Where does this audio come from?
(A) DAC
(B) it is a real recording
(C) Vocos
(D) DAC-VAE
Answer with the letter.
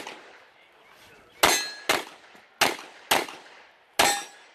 B